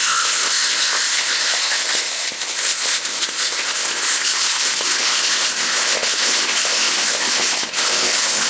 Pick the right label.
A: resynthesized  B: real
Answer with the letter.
A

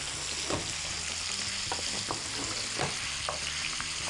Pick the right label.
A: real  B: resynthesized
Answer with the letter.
A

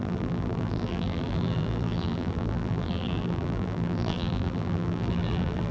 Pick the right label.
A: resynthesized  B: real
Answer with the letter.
A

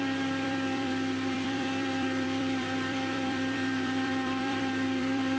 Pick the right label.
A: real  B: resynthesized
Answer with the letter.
B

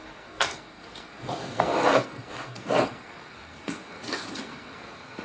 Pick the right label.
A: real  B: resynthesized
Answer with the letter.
B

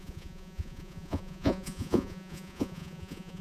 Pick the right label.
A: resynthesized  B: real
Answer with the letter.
A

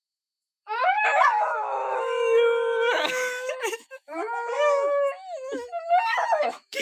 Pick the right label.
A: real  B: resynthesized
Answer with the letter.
B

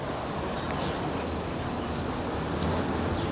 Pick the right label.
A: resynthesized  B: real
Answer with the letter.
B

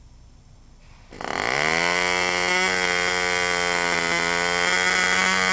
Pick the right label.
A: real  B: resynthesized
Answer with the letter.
A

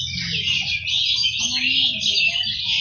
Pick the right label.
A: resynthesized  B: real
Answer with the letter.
B